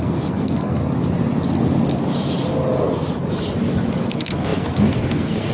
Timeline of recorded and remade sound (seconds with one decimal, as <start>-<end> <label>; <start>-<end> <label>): 0.0-0.8 remade; 0.8-4.1 recorded; 4.1-5.5 remade